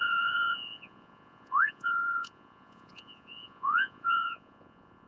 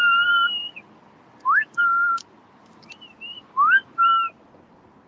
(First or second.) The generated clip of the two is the first